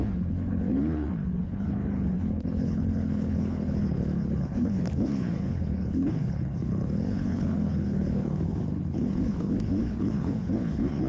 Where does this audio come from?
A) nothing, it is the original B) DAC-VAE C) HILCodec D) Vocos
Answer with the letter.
C